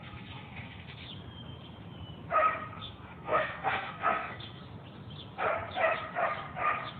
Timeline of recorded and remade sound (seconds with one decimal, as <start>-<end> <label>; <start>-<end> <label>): 0.0-1.0 remade; 1.0-2.8 recorded; 2.8-4.6 remade; 4.6-7.0 recorded